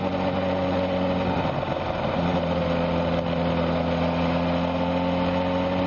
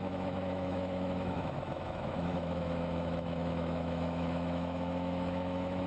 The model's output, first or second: second